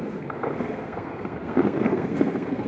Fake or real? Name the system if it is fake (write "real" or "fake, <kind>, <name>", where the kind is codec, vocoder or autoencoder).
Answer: fake, codec, SNAC